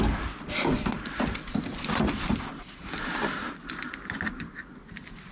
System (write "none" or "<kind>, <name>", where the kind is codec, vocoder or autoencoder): none